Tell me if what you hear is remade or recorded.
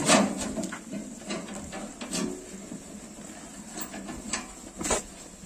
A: recorded